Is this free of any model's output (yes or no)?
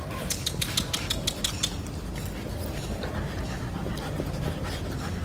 yes